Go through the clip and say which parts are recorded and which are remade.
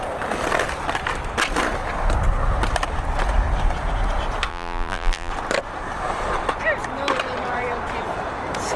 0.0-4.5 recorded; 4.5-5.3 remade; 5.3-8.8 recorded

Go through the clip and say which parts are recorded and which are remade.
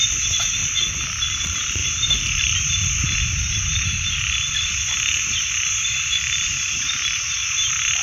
0.0-0.6 remade; 0.6-1.4 recorded; 1.4-8.0 remade